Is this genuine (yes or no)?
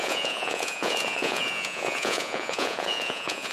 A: no